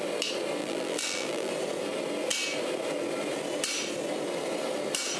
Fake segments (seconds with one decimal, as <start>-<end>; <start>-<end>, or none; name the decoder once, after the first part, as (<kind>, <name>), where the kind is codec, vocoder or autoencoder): 0.6-1.5 (vocoder, BigVGAN v2)